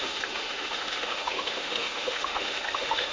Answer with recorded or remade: remade